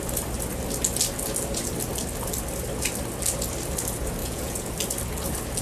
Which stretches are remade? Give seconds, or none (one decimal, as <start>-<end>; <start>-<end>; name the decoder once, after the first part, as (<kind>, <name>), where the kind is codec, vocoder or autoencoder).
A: 4.2-4.7 (vocoder, Vocos)